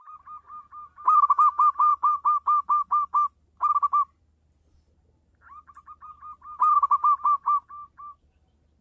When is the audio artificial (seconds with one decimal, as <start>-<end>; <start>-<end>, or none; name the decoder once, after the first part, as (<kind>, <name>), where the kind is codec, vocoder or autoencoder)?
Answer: none